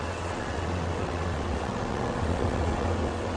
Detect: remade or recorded remade